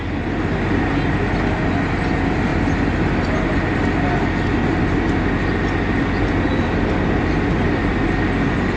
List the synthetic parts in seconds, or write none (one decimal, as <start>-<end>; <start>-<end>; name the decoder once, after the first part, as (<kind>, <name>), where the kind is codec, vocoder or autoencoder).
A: none